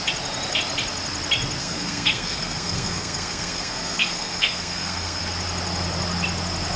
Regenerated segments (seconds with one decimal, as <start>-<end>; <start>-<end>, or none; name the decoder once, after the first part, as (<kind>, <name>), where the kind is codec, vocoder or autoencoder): 1.6-5.2 (codec, SNAC)